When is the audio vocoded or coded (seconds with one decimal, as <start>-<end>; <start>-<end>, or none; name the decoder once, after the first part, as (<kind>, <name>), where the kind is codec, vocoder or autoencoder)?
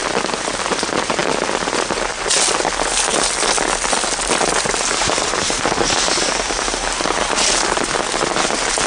none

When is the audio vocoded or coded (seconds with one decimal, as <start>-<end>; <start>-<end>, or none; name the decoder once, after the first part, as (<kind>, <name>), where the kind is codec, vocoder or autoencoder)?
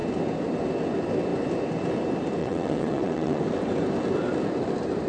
2.4-3.4 (vocoder, WaveNeXt)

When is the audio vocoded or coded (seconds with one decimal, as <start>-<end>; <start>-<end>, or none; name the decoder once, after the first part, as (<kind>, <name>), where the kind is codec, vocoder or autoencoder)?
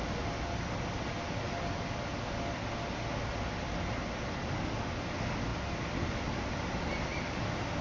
none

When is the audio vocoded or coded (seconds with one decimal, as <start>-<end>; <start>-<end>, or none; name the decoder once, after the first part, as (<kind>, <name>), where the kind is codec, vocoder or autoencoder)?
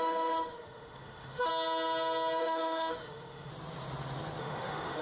0.0-1.5 (autoencoder, DAC-VAE); 2.4-3.5; 4.4-5.0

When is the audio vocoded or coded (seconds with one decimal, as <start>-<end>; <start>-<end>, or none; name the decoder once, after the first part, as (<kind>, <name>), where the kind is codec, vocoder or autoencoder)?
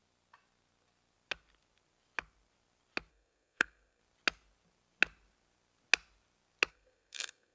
3.1-4.0 (codec, SNAC); 6.7-7.5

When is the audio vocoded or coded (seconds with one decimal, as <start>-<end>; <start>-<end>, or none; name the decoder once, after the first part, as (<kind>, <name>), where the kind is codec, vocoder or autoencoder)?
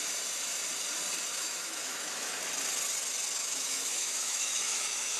1.3-2.4 (autoencoder, DAC-VAE); 3.4-5.2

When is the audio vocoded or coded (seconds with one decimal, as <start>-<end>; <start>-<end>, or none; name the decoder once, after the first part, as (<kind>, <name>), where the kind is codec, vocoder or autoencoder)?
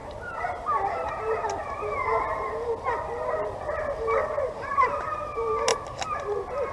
0.0-2.5 (vocoder, BigVGAN v2); 4.2-5.1